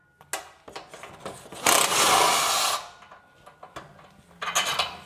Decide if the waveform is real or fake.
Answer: real